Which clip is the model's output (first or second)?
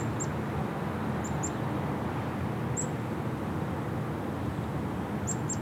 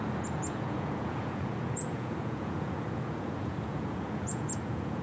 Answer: second